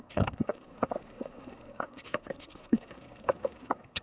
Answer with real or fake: fake